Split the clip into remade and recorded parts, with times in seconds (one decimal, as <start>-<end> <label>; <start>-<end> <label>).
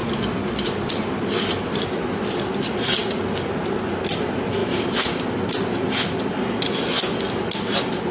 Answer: 0.0-1.5 remade; 1.5-4.6 recorded; 4.6-5.2 remade; 5.2-8.1 recorded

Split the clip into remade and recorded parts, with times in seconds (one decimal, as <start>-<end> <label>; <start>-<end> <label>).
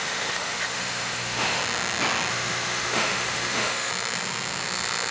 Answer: 0.0-1.6 remade; 1.6-2.3 recorded; 2.3-3.9 remade; 3.9-5.1 recorded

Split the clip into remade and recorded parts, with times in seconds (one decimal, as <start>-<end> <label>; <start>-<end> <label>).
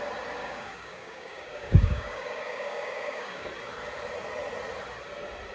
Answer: 0.0-0.4 recorded; 0.4-3.5 remade; 3.5-5.5 recorded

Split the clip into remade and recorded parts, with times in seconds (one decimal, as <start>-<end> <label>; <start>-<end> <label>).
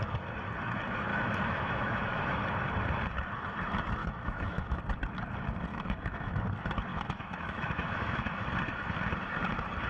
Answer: 0.0-1.1 recorded; 1.1-2.4 remade; 2.4-4.0 recorded; 4.0-4.8 remade; 4.8-5.7 recorded; 5.7-6.4 remade; 6.4-6.9 recorded; 6.9-8.5 remade; 8.5-9.9 recorded